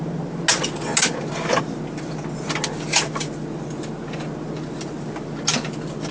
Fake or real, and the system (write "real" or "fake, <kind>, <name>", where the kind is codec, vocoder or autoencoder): real